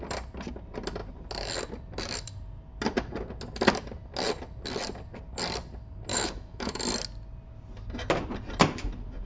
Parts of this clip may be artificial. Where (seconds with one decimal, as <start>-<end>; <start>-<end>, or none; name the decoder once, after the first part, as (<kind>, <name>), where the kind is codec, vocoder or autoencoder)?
6.1-6.8 (autoencoder, DAC-VAE)